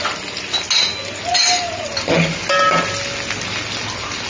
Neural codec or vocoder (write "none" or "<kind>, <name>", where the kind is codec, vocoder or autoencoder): none